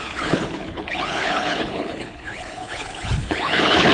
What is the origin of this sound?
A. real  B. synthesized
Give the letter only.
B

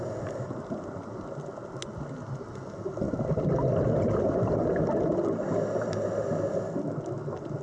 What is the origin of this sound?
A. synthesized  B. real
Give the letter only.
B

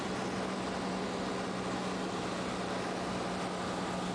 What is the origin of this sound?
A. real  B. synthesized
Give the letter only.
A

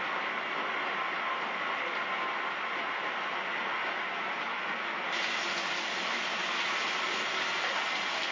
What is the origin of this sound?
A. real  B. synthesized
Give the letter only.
A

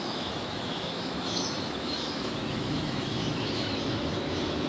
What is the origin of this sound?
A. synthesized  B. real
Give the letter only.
A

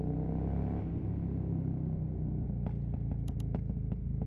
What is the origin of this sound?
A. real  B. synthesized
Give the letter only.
A